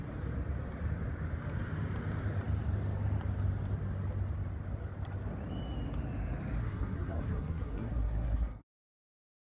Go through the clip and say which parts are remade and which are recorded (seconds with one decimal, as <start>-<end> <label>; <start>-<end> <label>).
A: 0.0-6.6 recorded; 6.6-9.5 remade